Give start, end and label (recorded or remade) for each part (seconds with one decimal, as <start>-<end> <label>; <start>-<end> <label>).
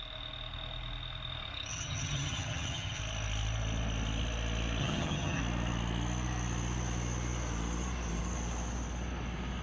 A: 0.0-1.7 recorded; 1.7-3.0 remade; 3.0-4.8 recorded; 4.8-5.4 remade; 5.4-9.6 recorded